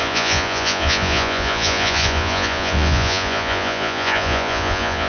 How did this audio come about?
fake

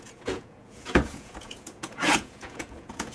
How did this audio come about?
fake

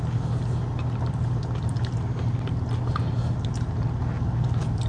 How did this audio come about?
real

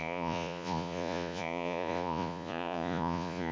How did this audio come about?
fake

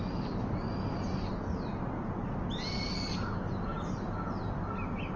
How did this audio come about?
real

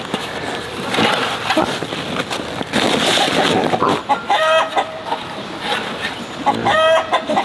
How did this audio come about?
real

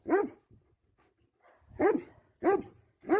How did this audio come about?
real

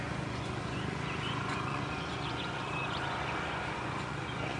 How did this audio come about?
fake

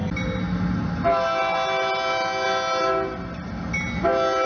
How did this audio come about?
real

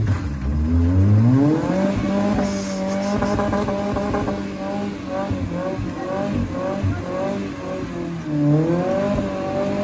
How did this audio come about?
real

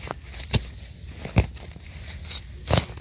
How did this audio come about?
real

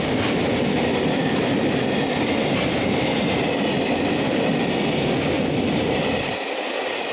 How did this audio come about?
real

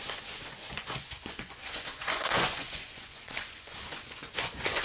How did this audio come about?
fake